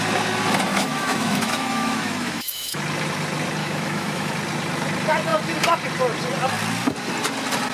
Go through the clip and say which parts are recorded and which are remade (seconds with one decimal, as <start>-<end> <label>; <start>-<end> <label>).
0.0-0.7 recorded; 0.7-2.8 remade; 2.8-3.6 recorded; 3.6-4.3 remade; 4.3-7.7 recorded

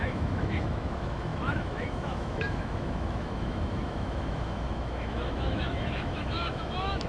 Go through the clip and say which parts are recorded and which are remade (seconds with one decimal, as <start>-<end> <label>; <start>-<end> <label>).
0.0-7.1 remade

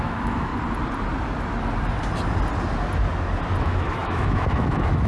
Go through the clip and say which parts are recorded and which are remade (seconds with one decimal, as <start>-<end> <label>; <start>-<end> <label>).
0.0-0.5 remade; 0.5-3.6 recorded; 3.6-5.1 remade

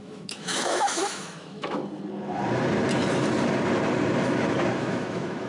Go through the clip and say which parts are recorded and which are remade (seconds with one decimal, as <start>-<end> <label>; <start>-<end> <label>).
0.0-1.8 remade; 1.8-4.8 recorded; 4.8-5.5 remade

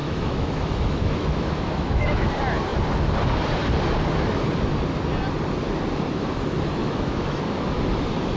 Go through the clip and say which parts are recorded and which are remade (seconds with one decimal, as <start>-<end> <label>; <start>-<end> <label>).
0.0-2.3 remade; 2.3-6.8 recorded; 6.8-7.4 remade; 7.4-8.4 recorded

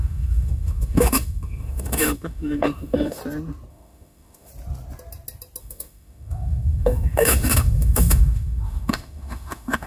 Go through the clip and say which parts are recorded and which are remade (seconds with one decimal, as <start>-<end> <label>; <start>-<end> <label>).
0.0-3.2 remade; 3.2-3.7 recorded; 3.7-4.5 remade; 4.5-5.6 recorded; 5.6-9.9 remade

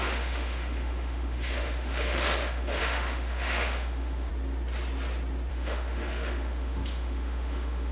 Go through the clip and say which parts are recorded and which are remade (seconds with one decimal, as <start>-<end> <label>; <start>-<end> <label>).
0.0-4.3 remade; 4.3-5.5 recorded; 5.5-7.9 remade

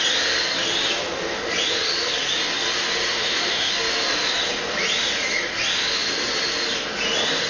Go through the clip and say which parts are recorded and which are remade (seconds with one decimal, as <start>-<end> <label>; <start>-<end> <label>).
0.0-3.1 recorded; 3.1-3.7 remade; 3.7-7.5 recorded